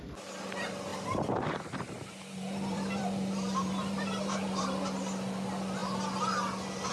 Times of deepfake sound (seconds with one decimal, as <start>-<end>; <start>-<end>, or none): 0.9-4.6

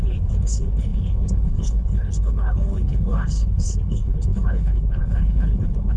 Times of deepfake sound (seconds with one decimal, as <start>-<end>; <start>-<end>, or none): 0.0-6.0

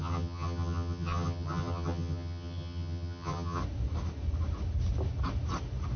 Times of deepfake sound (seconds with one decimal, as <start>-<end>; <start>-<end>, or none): 0.0-3.6

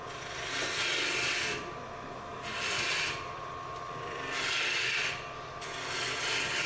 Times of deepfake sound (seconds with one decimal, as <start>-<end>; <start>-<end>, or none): 2.3-5.5

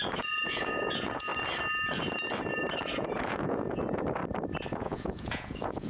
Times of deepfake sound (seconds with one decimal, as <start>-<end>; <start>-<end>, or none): 0.0-1.3; 3.0-4.2; 4.7-5.9

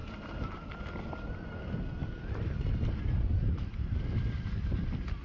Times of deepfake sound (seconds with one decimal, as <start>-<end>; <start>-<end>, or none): none

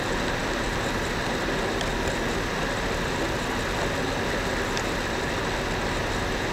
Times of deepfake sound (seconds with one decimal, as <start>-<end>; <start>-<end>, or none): none

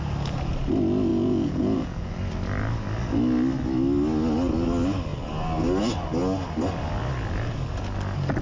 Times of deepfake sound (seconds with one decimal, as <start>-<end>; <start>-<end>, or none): 1.1-2.1